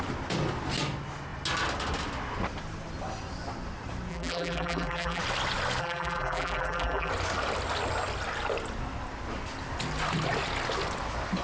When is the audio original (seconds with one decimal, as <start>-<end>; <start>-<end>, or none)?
0.0-4.1; 5.2-5.8; 7.1-11.4